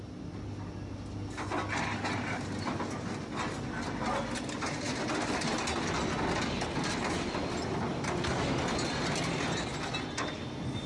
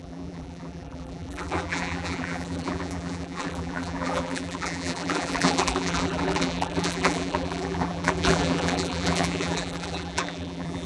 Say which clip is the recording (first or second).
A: first